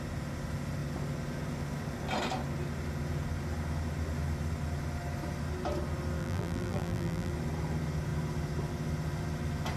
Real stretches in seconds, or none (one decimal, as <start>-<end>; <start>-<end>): 0.0-6.2; 7.3-9.8